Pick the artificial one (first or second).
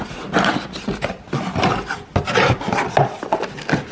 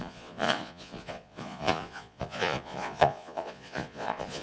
second